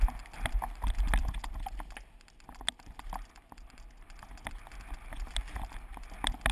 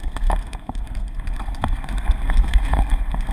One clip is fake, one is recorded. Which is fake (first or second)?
second